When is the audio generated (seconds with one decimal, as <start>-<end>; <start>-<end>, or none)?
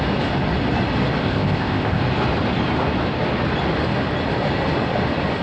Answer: 1.2-2.0